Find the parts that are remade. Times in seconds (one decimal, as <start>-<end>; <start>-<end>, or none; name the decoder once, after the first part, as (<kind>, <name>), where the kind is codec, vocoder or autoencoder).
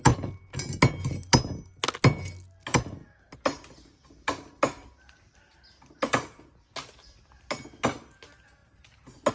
none